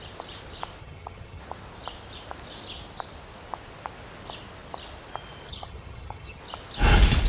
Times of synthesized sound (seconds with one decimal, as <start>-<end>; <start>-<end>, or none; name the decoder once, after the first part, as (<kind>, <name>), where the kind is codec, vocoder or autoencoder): 0.8-1.4 (vocoder, HiFi-GAN); 5.5-6.4